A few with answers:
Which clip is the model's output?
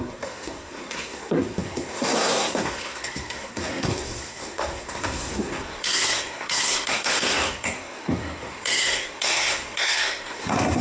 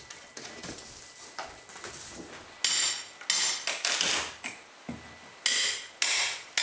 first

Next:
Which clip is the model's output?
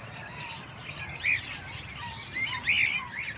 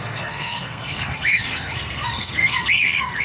second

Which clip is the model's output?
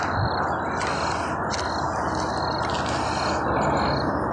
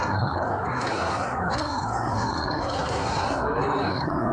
second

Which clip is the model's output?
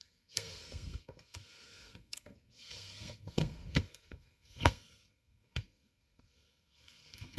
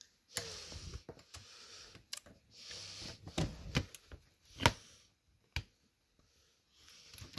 first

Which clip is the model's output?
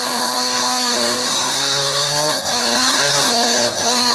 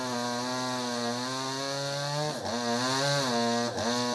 first